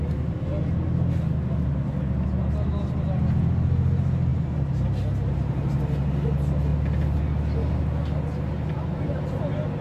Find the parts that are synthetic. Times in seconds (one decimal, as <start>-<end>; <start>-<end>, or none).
none